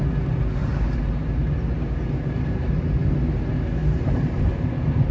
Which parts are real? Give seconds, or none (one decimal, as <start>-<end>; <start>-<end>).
0.0-0.6; 3.1-3.8; 4.5-5.1